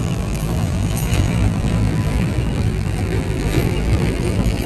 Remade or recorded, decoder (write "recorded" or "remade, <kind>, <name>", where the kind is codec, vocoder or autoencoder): remade, vocoder, BigVGAN v2